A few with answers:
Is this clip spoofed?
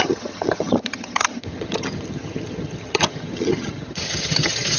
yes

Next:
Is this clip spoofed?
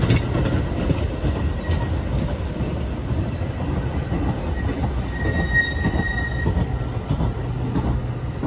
no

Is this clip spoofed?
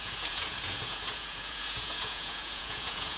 yes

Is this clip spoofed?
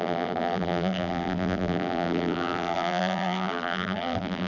yes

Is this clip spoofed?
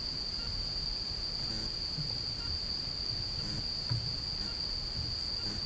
no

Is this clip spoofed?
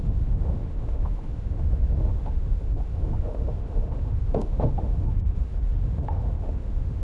yes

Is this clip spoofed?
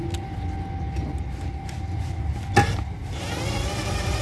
no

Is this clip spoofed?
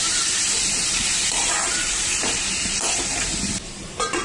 yes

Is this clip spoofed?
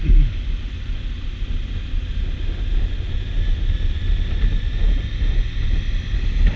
no